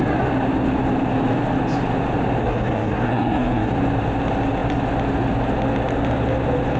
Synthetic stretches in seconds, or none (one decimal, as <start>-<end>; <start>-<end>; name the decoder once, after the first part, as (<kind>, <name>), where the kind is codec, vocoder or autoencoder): 2.4-3.7 (codec, SNAC)